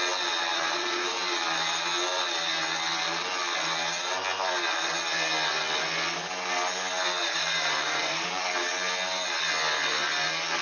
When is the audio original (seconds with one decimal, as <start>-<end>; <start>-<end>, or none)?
0.0-0.5; 1.1-7.2; 8.5-10.6